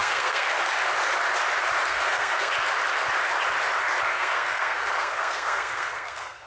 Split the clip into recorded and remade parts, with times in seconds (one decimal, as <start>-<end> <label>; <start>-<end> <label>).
0.0-0.6 remade; 0.6-1.9 recorded; 1.9-2.5 remade; 2.5-4.1 recorded; 4.1-6.5 remade